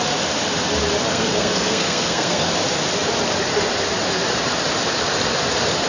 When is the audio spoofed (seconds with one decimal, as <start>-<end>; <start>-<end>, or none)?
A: 1.1-2.5